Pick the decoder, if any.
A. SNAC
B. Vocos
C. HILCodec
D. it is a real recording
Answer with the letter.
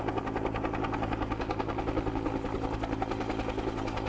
D